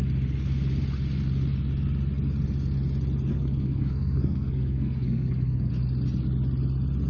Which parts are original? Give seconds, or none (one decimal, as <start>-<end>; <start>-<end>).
0.0-3.3; 5.7-7.1